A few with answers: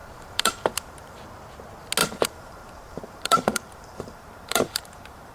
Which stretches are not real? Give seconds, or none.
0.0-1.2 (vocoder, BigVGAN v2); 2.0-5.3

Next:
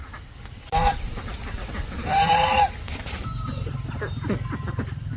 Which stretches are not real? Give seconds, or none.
none

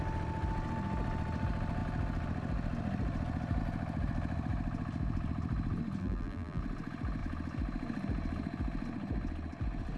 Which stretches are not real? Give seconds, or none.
6.0-6.6 (vocoder, BigVGAN v2)

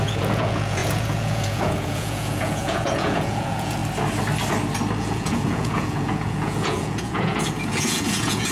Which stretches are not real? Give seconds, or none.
0.0-3.8 (vocoder, Vocos); 5.0-8.5

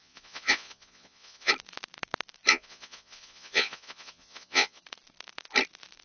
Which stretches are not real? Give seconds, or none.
0.0-1.5 (vocoder, Vocos); 2.5-4.8